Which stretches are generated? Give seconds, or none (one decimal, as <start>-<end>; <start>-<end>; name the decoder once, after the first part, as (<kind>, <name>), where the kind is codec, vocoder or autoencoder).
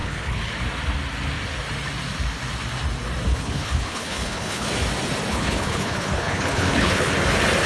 0.0-0.5 (codec, HILCodec); 3.3-4.7; 5.3-7.1